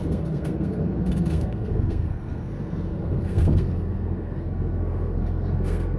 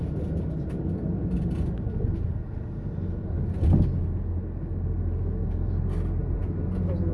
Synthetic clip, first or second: first